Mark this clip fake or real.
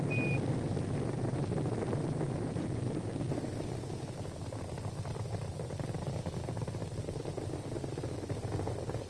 real